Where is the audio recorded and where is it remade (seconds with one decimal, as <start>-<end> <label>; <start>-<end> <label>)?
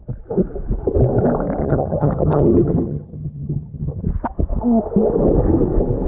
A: 0.0-1.6 recorded; 1.6-4.0 remade; 4.0-6.1 recorded